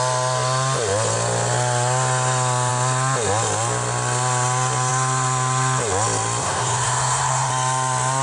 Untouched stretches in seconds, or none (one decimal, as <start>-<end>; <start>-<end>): 0.0-6.4; 7.5-8.2

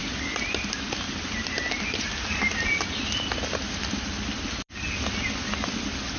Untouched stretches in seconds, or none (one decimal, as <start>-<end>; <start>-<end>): 0.0-6.2

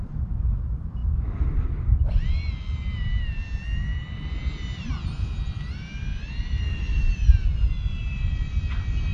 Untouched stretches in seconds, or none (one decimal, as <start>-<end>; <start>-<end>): 0.0-9.1

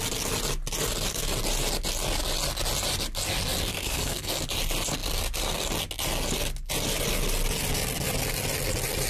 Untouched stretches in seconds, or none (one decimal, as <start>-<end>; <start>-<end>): 0.0-3.7; 4.4-9.1